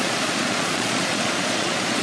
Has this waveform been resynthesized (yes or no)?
yes